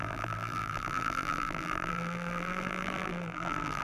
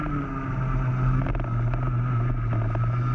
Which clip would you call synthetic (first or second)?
first